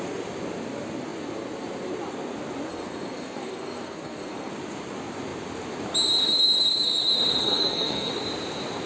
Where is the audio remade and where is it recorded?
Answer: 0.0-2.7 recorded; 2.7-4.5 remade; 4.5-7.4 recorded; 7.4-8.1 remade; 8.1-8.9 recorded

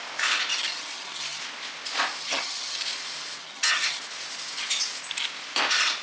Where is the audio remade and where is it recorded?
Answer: 0.0-0.5 recorded; 0.5-1.4 remade; 1.4-2.2 recorded; 2.2-2.8 remade; 2.8-3.4 recorded; 3.4-4.0 remade; 4.0-6.0 recorded